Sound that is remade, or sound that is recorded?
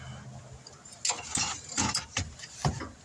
recorded